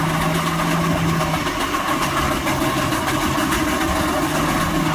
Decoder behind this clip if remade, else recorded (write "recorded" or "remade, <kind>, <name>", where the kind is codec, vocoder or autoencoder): recorded